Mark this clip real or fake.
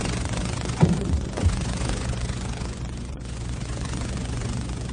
fake